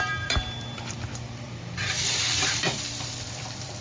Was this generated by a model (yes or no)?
yes